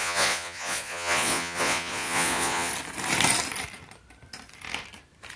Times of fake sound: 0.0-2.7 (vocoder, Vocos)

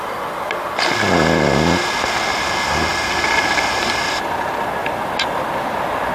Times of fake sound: none

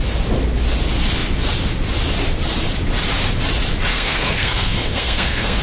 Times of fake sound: 3.9-5.6 (codec, SNAC)

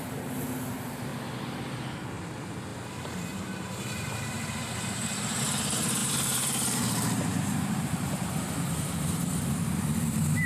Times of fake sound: 0.0-1.1 (vocoder, BigVGAN v2); 2.2-10.5

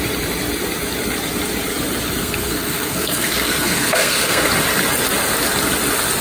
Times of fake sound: 2.2-4.5 (codec, SNAC)